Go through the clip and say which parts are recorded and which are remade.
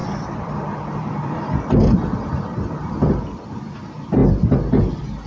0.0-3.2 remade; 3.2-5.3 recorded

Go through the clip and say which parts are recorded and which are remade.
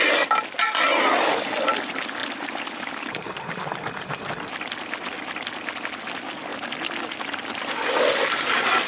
0.0-8.9 recorded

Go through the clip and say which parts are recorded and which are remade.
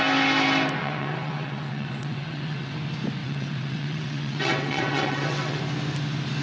0.0-0.8 recorded; 0.8-2.7 remade; 2.7-3.2 recorded; 3.2-5.6 remade; 5.6-6.4 recorded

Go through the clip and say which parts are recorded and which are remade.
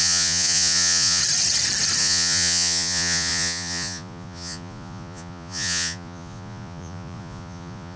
0.0-1.2 remade; 1.2-2.0 recorded; 2.0-8.0 remade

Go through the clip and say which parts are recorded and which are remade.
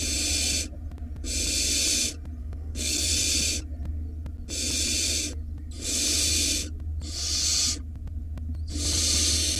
0.0-2.4 recorded; 2.4-3.1 remade; 3.1-9.6 recorded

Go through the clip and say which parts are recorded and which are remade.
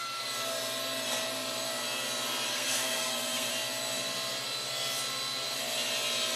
0.0-2.5 recorded; 2.5-3.5 remade; 3.5-6.4 recorded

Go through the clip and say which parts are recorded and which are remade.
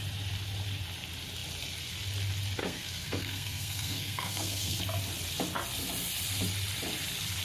0.0-2.6 recorded; 2.6-4.8 remade; 4.8-7.4 recorded